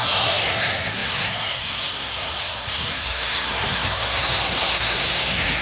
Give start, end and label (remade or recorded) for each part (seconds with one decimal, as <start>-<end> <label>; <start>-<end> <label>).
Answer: 0.0-5.6 remade